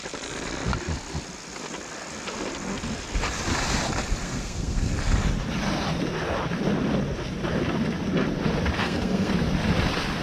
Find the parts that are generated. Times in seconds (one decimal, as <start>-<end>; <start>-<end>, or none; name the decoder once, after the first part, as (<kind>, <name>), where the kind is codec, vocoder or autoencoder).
4.2-4.9 (codec, SNAC); 8.8-9.3